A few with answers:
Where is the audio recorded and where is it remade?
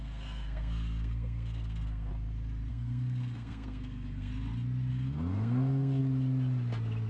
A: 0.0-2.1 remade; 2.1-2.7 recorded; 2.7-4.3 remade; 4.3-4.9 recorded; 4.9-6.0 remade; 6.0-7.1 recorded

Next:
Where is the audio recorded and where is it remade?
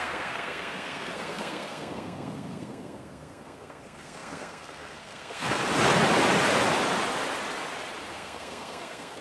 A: 0.0-5.6 remade; 5.6-8.1 recorded; 8.1-9.2 remade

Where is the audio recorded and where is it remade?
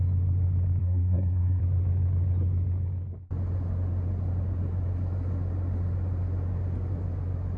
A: 0.0-0.8 recorded; 0.8-1.6 remade; 1.6-7.6 recorded